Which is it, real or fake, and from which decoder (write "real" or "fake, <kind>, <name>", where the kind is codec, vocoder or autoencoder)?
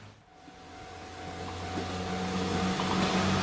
real